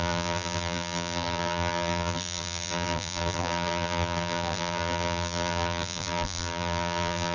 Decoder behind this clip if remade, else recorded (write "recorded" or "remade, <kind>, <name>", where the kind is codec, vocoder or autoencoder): remade, vocoder, BigVGAN v2